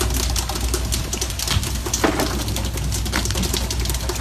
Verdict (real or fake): real